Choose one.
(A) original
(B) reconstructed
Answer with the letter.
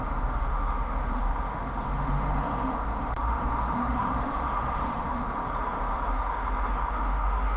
B